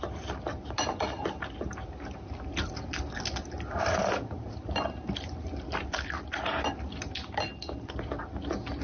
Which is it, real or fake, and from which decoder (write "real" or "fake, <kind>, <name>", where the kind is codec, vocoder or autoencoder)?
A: real